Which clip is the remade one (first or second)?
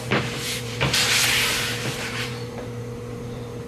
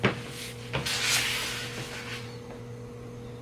first